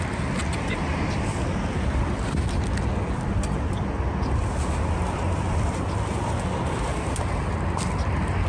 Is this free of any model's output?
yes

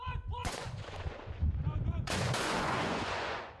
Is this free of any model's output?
no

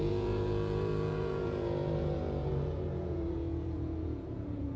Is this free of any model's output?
no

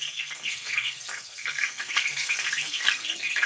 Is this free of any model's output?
no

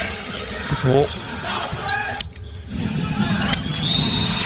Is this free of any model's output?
no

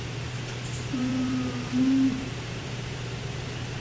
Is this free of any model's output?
no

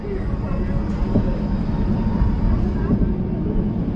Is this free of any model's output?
yes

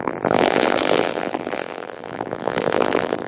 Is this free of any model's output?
no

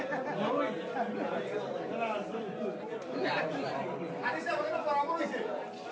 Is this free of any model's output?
yes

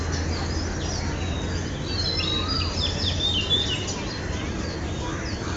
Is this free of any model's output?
yes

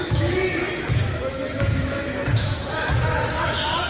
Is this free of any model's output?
no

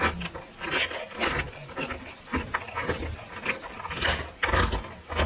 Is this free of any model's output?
yes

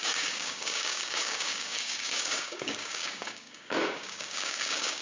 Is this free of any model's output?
no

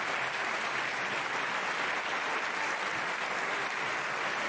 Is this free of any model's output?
yes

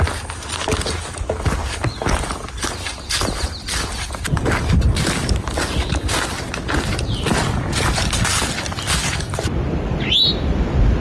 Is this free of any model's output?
yes